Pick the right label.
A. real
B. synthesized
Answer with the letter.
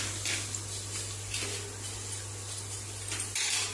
A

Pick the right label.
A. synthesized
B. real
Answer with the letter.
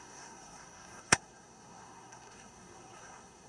A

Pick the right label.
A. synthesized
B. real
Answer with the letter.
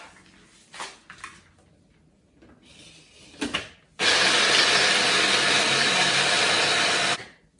B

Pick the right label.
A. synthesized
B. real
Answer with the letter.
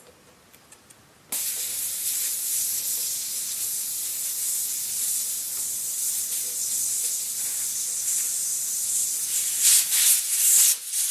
B